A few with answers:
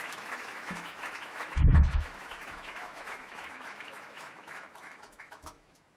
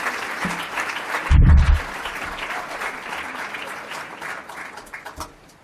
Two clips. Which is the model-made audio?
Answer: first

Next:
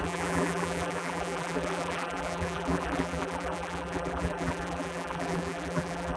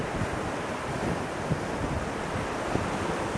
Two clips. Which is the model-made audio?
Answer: first